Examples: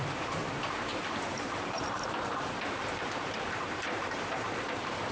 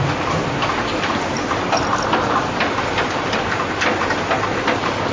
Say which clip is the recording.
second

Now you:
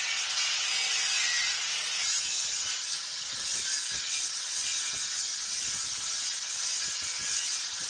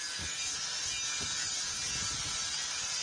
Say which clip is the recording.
second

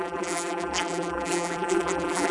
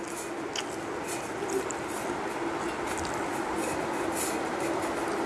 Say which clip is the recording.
second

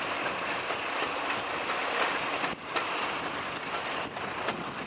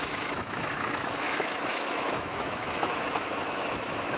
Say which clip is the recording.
first